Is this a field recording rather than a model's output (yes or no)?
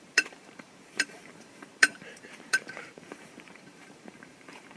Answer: no